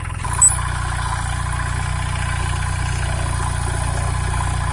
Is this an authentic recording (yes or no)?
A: yes